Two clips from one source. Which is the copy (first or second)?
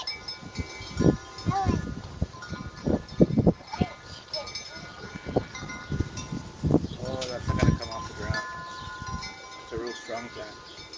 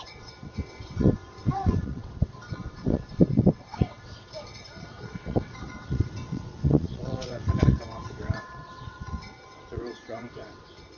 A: second